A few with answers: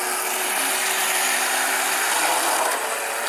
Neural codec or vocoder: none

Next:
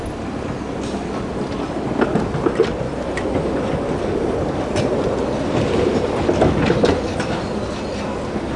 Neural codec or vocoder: none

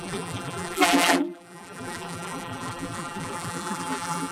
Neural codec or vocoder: vocoder, BigVGAN v2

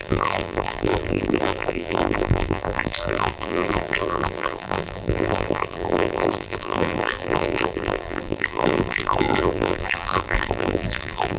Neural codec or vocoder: vocoder, BigVGAN v2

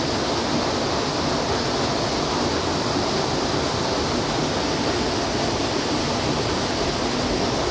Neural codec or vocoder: none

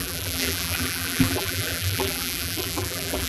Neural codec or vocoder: vocoder, BigVGAN v2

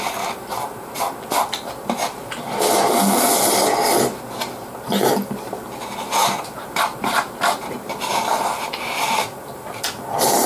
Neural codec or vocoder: none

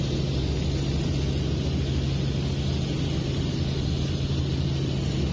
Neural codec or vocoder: none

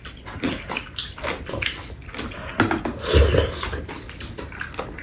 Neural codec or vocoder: vocoder, BigVGAN v2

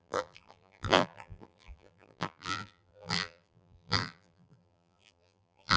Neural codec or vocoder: vocoder, BigVGAN v2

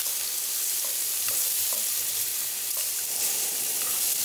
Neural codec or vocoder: vocoder, BigVGAN v2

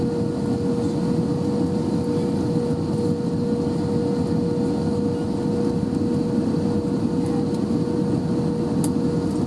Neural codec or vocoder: none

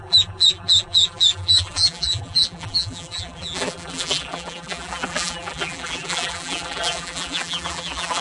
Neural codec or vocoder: vocoder, BigVGAN v2